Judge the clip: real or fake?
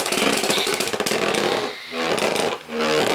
real